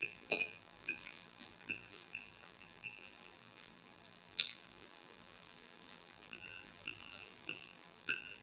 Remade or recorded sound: remade